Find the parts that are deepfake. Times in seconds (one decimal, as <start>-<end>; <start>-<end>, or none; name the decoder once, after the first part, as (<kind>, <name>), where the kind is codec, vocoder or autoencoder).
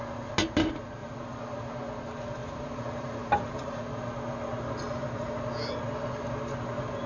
1.0-1.7 (vocoder, BigVGAN v2); 2.4-3.8